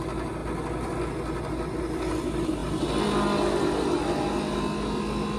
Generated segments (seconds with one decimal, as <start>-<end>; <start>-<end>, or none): none